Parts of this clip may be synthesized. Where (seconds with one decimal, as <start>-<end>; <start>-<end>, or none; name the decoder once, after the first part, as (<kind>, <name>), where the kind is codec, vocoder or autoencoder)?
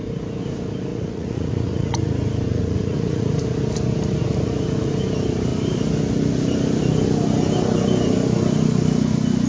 0.9-2.1 (vocoder, Vocos); 2.5-3.3